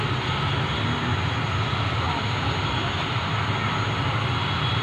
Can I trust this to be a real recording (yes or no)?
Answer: yes